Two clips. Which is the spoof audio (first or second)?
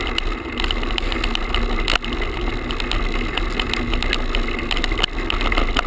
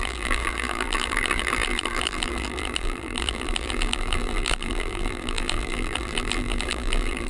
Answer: second